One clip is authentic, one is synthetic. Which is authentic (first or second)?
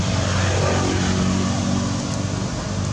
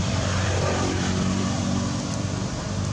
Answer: first